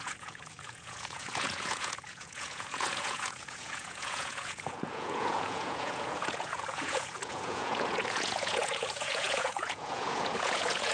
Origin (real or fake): fake